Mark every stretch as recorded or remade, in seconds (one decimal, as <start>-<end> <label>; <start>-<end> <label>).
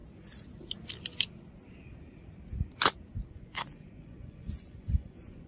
0.0-3.3 recorded; 3.3-5.5 remade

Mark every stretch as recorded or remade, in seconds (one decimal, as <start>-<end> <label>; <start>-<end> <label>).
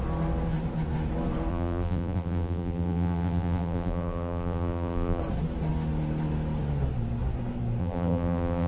0.0-1.5 recorded; 1.5-5.2 remade; 5.2-7.8 recorded; 7.8-8.7 remade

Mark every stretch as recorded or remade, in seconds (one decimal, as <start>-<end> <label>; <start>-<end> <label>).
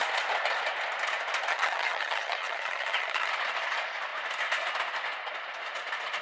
0.0-1.5 recorded; 1.5-3.3 remade; 3.3-6.2 recorded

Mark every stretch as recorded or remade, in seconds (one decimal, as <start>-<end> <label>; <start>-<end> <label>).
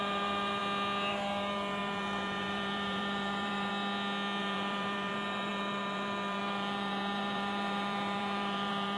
0.0-0.6 remade; 0.6-1.1 recorded; 1.1-3.7 remade; 3.7-4.4 recorded; 4.4-9.0 remade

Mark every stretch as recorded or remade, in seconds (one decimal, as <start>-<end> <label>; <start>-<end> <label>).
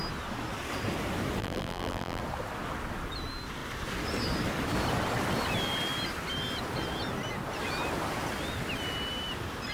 0.0-1.4 recorded; 1.4-2.2 remade; 2.2-9.7 recorded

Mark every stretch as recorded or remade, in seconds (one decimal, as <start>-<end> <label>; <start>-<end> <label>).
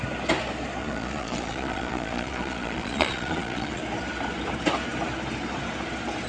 0.0-0.8 recorded; 0.8-3.8 remade; 3.8-6.3 recorded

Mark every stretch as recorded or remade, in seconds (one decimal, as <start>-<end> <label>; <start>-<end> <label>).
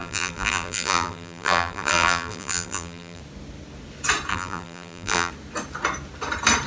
0.0-3.2 remade; 3.2-4.3 recorded; 4.3-5.3 remade; 5.3-6.7 recorded